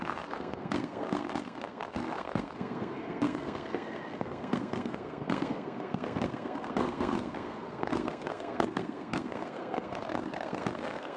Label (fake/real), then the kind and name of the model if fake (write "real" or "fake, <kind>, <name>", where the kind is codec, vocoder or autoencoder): fake, codec, SNAC